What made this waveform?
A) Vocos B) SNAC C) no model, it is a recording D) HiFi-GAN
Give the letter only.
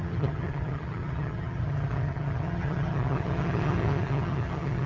D